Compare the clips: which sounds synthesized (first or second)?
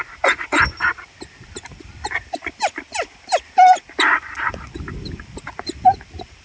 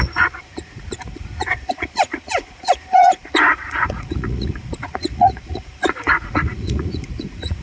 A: second